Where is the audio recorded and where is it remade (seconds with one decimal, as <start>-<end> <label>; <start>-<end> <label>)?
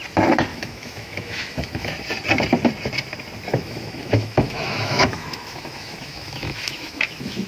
0.0-0.5 recorded; 0.5-1.9 remade; 1.9-3.5 recorded; 3.5-7.5 remade